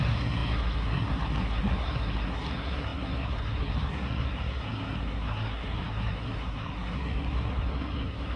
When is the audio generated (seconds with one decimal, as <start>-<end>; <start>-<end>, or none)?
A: 0.0-8.4